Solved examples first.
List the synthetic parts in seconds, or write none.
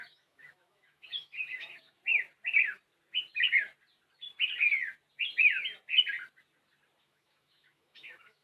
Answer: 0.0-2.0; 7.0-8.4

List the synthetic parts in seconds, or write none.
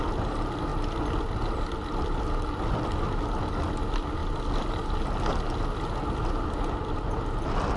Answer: none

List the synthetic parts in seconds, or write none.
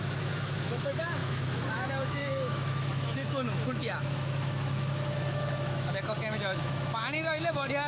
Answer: 0.0-7.9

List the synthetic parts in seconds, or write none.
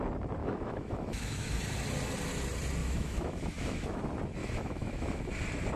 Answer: 0.4-1.6; 2.8-4.0; 4.4-5.2